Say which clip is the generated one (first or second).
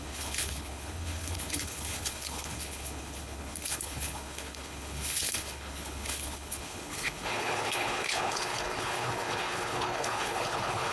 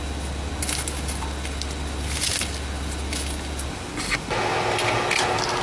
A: first